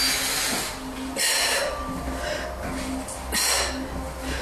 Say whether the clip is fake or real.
real